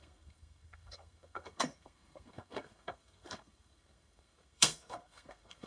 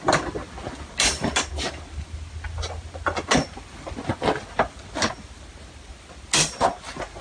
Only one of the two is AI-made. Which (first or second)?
first